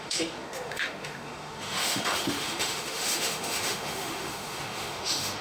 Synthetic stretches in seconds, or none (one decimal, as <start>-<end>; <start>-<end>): 0.0-5.4